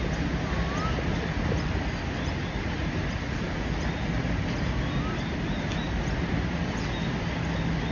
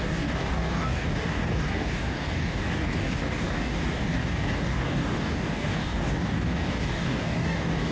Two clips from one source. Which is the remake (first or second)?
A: second